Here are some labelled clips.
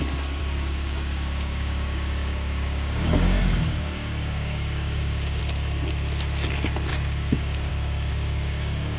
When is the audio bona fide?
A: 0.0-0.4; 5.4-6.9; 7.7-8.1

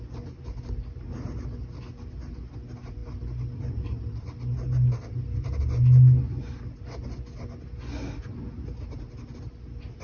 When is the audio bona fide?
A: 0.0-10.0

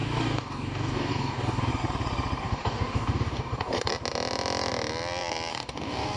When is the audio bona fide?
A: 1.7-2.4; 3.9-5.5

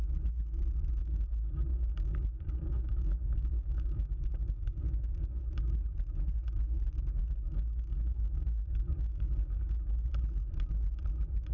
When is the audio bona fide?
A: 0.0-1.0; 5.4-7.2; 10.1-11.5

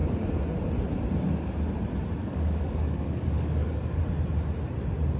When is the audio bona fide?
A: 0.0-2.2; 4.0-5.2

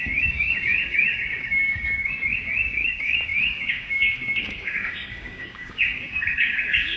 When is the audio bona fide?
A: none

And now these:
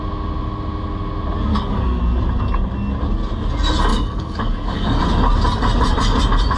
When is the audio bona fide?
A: 0.0-1.5; 2.0-3.9; 5.0-6.6

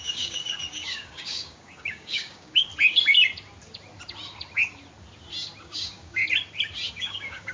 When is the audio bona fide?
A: 2.7-5.6; 6.2-6.9